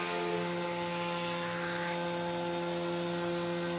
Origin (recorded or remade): recorded